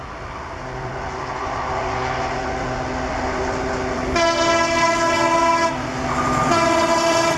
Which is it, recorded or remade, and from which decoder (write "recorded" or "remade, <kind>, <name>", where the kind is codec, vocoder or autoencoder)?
recorded